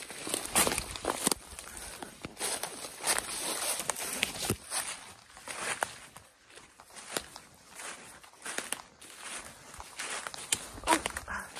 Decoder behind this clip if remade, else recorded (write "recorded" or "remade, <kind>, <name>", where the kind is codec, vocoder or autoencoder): recorded